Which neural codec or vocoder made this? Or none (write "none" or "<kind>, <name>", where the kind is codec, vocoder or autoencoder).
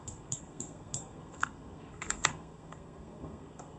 codec, SNAC